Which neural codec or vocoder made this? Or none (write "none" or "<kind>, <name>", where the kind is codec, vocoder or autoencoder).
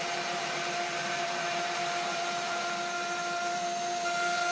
vocoder, BigVGAN v2